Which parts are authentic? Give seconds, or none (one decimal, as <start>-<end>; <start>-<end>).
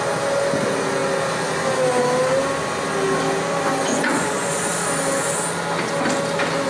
0.0-3.9; 4.7-6.7